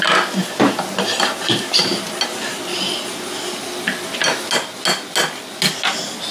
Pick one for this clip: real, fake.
real